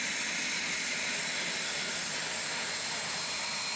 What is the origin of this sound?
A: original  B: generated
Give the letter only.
A